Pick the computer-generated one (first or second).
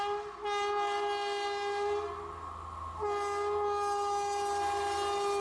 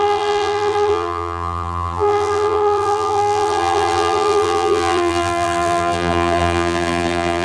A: second